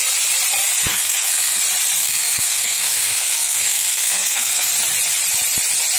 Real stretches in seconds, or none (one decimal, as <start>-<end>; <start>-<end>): 0.0-0.9; 1.6-2.0; 4.7-6.0